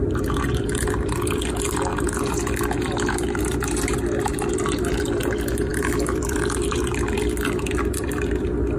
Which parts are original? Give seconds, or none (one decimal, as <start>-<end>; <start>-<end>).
none